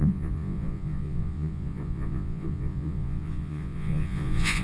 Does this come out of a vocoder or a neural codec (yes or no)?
yes